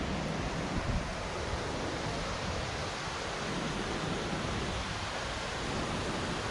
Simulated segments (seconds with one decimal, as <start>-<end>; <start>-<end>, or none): 1.1-1.7